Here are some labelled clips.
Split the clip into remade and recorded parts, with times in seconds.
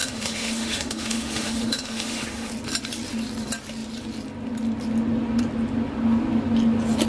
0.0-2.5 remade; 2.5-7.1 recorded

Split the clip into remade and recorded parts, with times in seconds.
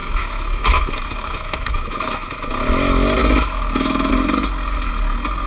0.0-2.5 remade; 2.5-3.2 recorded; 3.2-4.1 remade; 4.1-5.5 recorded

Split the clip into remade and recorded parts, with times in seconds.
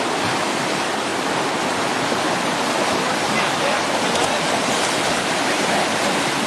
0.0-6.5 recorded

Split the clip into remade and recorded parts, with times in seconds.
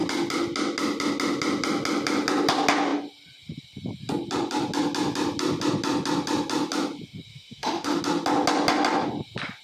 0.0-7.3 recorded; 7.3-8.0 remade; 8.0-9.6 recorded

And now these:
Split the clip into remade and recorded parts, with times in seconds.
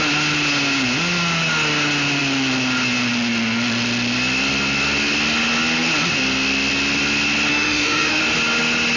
0.0-7.5 recorded; 7.5-8.2 remade; 8.2-9.0 recorded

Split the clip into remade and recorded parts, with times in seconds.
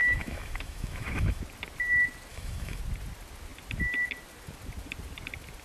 0.0-1.4 remade; 1.4-2.3 recorded; 2.3-2.8 remade; 2.8-5.6 recorded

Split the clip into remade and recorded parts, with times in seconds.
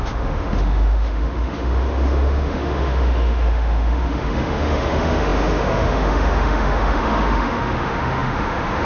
0.0-8.8 remade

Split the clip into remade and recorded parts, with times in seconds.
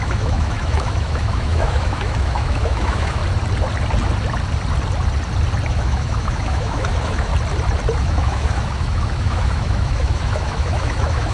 0.0-3.2 remade; 3.2-5.7 recorded; 5.7-7.3 remade; 7.3-8.0 recorded; 8.0-11.3 remade